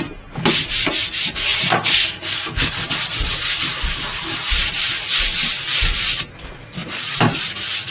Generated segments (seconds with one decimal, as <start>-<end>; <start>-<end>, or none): 6.8-7.4